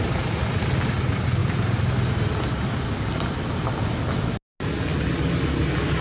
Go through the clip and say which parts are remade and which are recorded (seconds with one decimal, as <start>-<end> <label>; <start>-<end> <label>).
0.0-6.0 recorded